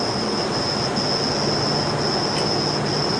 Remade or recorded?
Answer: recorded